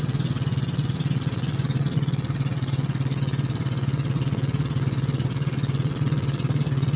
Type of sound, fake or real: fake